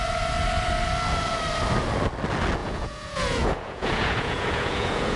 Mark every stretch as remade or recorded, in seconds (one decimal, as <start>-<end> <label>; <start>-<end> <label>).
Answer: 0.0-2.6 recorded; 2.6-5.2 remade